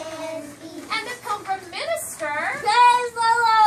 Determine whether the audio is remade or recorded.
recorded